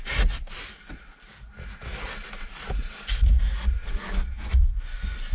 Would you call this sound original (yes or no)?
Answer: yes